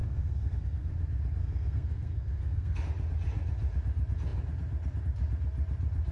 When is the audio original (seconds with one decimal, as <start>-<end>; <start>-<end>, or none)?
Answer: 0.9-1.4; 2.8-6.1

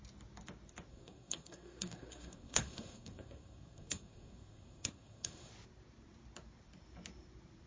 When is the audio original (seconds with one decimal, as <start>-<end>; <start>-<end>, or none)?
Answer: 0.0-0.9; 5.5-7.7

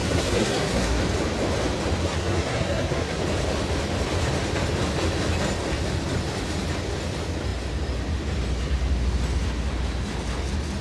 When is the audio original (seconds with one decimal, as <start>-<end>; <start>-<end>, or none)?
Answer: 1.0-2.0; 3.2-10.8

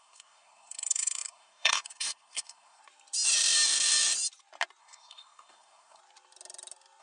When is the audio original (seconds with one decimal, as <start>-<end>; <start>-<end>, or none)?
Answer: 2.8-4.8; 6.0-7.0

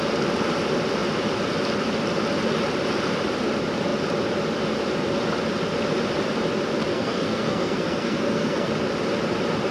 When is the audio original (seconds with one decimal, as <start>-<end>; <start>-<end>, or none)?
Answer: 0.0-6.9; 8.7-9.7

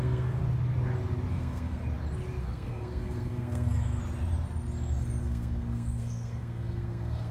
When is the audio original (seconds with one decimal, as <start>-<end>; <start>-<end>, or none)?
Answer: 0.4-1.3; 1.8-2.4; 4.0-5.2

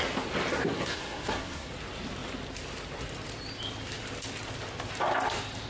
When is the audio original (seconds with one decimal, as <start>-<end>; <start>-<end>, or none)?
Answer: 0.0-0.5; 1.7-5.7

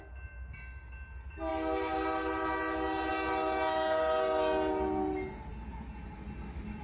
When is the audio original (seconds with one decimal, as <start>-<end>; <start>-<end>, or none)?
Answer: 0.0-6.8